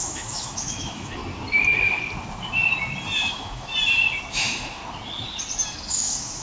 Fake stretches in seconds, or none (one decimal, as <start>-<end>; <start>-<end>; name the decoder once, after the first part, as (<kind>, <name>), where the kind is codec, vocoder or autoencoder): 0.0-1.2 (autoencoder, DAC-VAE); 3.3-3.7; 4.3-4.8; 5.9-6.4